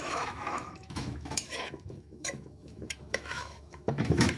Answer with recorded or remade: remade